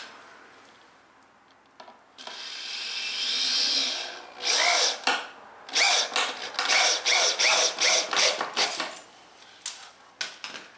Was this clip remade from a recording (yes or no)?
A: no